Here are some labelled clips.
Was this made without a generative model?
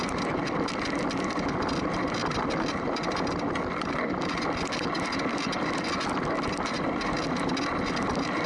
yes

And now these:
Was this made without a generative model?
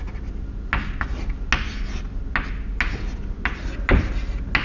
yes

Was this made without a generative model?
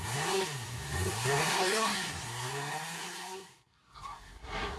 no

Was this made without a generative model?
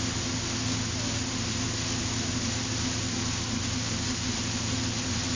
yes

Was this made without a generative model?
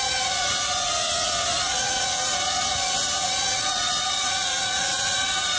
no